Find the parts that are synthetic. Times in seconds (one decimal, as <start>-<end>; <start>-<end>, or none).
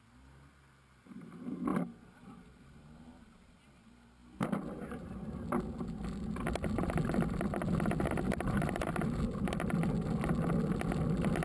none